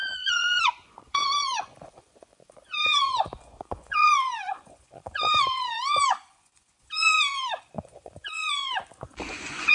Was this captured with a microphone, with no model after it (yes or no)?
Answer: no